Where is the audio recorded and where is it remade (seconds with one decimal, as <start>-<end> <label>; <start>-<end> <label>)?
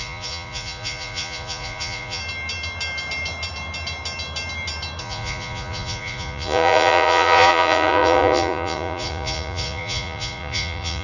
0.0-2.2 remade; 2.2-5.0 recorded; 5.0-11.0 remade